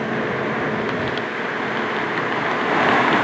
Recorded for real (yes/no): yes